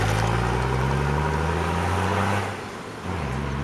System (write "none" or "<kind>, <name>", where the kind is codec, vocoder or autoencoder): none